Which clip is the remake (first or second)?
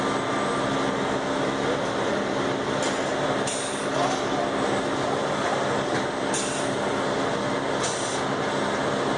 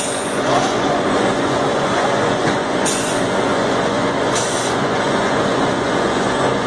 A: second